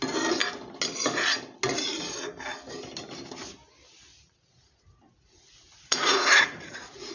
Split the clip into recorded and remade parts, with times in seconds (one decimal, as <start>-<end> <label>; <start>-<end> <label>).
0.0-4.1 recorded; 4.1-7.1 remade